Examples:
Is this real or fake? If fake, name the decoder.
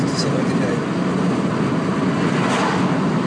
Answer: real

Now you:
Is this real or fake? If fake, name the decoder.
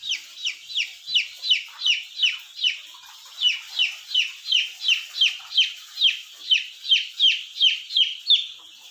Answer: real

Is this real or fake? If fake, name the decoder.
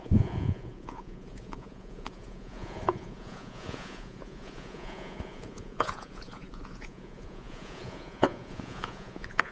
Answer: fake, vocoder, Vocos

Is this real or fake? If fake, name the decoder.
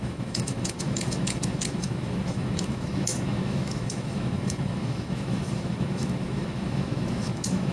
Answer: fake, autoencoder, DAC-VAE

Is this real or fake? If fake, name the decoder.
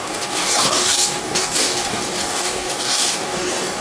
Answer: fake, codec, DAC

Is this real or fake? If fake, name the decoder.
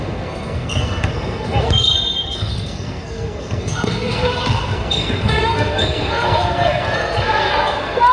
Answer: fake, codec, SNAC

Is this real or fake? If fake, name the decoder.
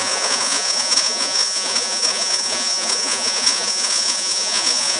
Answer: fake, vocoder, Vocos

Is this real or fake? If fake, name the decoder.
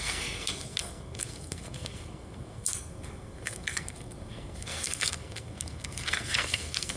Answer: fake, codec, SNAC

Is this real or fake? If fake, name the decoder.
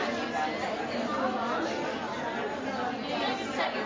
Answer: real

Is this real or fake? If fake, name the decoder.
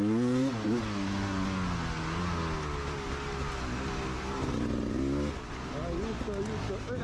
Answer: real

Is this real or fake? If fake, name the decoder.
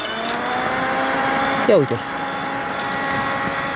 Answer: real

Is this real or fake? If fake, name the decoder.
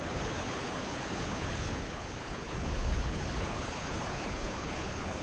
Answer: fake, codec, HILCodec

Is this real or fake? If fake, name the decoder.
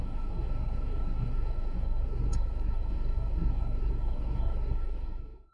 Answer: fake, codec, SNAC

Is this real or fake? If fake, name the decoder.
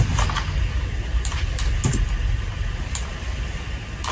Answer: real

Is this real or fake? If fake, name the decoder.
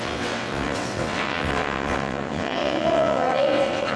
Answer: fake, vocoder, WaveNeXt